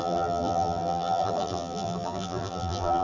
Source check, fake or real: fake